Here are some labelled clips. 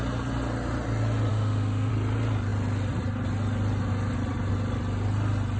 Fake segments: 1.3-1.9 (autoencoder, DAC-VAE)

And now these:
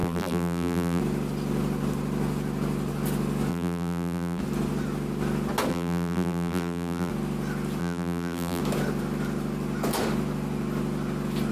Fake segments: 0.0-1.0 (vocoder, BigVGAN v2); 3.5-4.4; 5.7-7.1; 7.8-8.6

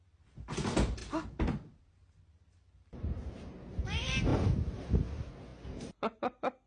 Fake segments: none

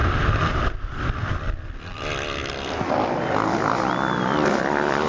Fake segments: none

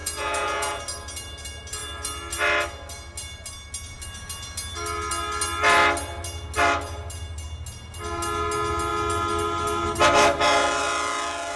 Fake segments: 0.0-0.8 (vocoder, Vocos)

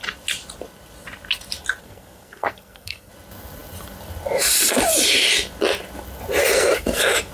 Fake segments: 1.8-3.1 (codec, SNAC); 6.4-7.3